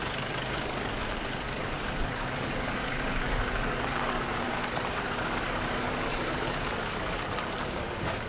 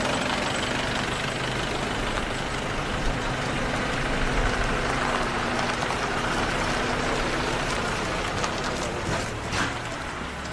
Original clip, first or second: second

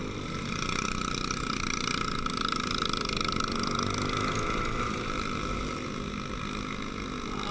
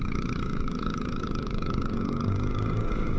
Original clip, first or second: first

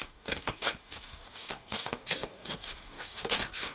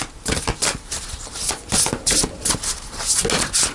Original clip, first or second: second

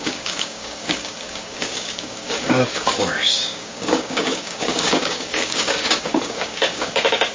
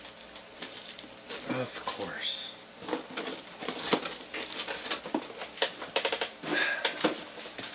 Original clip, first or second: second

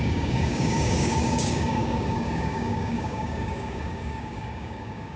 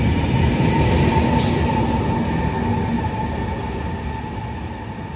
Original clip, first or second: second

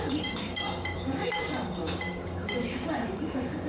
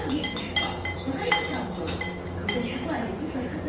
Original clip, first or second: second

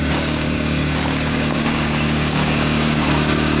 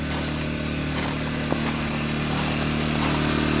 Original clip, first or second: second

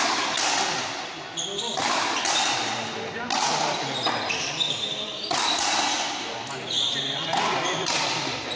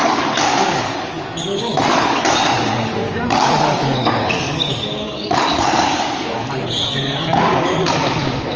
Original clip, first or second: first